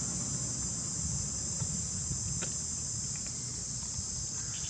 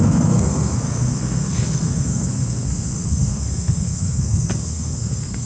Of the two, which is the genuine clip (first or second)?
first